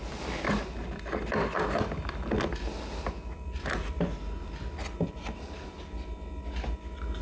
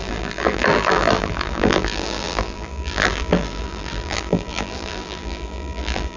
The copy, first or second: second